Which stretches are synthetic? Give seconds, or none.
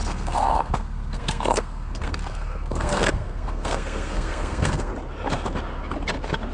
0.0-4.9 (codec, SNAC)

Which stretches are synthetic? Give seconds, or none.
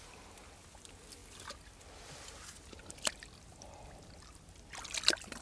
none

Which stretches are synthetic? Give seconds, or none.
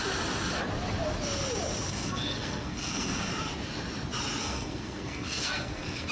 1.9-3.3 (codec, SNAC); 4.4-6.1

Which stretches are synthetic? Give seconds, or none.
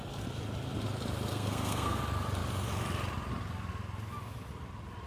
1.3-2.0 (codec, SNAC)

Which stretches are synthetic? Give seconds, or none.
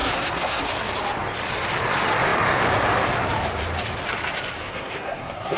0.0-0.6 (codec, SNAC); 4.6-5.6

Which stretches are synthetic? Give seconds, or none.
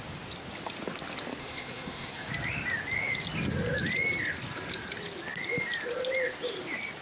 1.4-2.3 (codec, SNAC)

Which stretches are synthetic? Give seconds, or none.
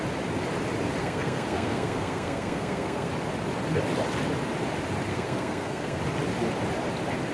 1.0-3.1 (codec, SNAC); 5.1-6.0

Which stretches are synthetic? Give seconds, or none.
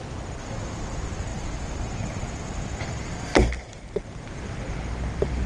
none